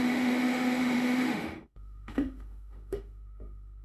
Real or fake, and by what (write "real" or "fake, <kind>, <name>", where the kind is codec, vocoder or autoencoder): fake, autoencoder, DAC-VAE